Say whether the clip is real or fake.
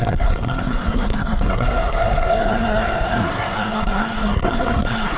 fake